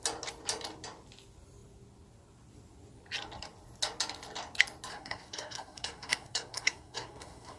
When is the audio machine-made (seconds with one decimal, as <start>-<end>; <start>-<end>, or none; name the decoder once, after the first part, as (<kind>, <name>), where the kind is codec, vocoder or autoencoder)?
4.9-7.6 (codec, SNAC)